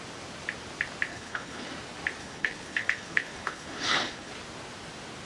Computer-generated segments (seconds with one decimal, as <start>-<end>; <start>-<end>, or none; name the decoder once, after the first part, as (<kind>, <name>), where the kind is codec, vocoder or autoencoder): 1.1-1.7 (codec, HILCodec); 2.2-4.3